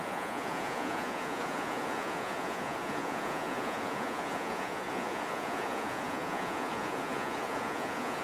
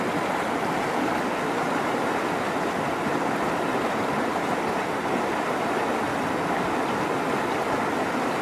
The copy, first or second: first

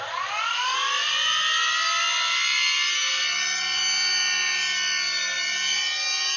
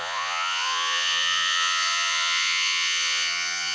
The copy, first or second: second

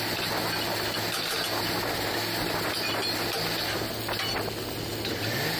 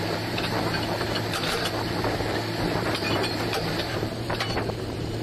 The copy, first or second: second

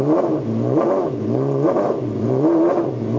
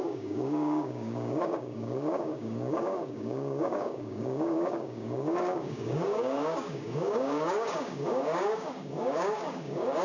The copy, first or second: second